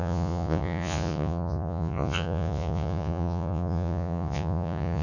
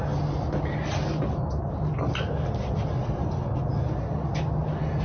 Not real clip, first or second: first